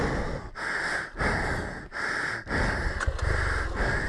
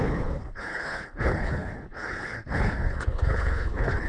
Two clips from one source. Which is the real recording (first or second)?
first